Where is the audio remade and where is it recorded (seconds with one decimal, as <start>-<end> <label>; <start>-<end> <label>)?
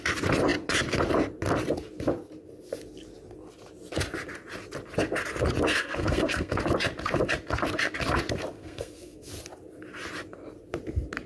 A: 0.0-5.7 recorded; 5.7-6.6 remade; 6.6-8.5 recorded; 8.5-9.3 remade; 9.3-11.3 recorded